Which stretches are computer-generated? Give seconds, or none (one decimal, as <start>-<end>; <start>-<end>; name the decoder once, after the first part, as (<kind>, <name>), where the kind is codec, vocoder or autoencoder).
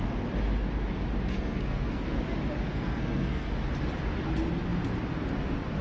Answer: 1.3-2.2 (codec, SNAC); 2.7-3.5